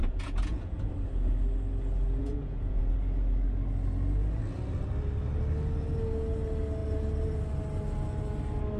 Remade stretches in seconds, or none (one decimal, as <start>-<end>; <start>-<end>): 0.0-0.9; 2.2-2.9